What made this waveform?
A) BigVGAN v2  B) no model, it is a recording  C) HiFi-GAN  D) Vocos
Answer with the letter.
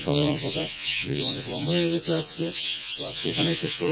D